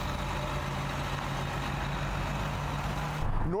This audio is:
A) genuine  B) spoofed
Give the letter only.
A